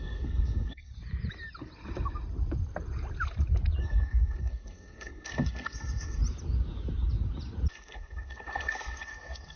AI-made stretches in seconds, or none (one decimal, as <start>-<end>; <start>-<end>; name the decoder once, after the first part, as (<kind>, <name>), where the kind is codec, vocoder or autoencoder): 0.0-0.9 (codec, SNAC); 3.8-6.2; 7.7-9.6